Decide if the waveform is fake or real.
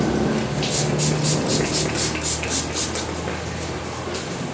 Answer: real